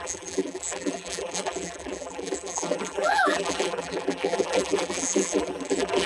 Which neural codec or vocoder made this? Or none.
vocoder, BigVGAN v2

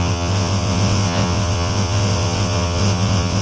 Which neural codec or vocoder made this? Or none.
vocoder, WaveNeXt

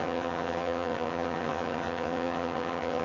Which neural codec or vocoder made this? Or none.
vocoder, HiFi-GAN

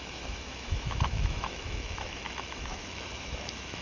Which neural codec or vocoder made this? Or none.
autoencoder, DAC-VAE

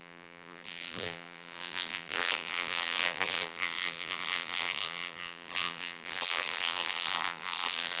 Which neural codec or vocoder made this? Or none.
vocoder, BigVGAN v2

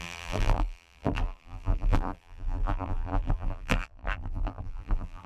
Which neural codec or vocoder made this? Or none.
vocoder, BigVGAN v2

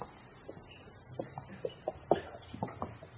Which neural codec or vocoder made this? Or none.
vocoder, BigVGAN v2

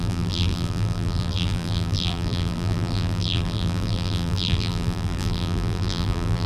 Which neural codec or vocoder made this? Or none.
vocoder, BigVGAN v2